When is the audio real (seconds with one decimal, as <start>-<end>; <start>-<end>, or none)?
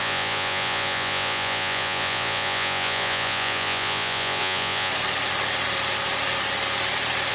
4.9-7.3